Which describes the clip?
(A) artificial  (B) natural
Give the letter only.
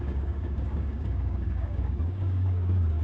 A